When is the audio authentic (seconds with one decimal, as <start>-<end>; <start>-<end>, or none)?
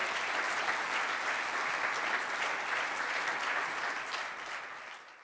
0.0-5.2